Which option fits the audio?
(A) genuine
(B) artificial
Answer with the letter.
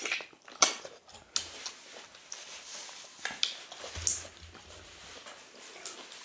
A